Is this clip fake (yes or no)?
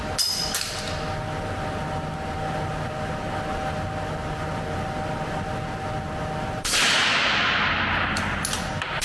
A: no